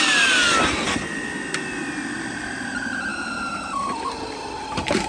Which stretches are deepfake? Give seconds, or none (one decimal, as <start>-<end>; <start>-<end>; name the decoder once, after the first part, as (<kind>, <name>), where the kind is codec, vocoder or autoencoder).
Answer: none